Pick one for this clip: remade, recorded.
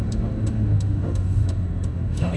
remade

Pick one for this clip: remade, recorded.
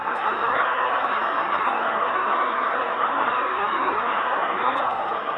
remade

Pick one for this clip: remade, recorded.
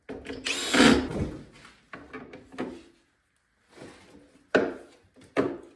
recorded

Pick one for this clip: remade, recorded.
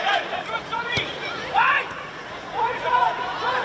remade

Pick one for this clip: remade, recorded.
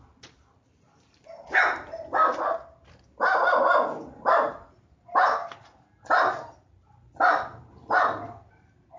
recorded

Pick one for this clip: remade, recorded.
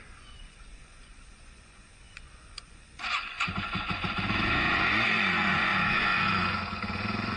remade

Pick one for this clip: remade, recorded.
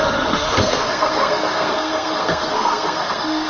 remade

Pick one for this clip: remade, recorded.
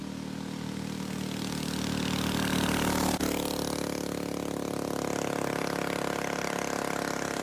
recorded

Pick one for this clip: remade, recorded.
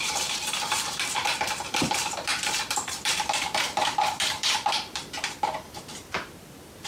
remade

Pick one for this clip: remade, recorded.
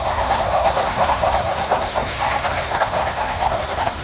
remade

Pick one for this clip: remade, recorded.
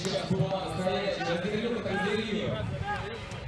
recorded